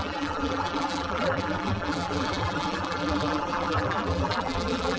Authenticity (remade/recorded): remade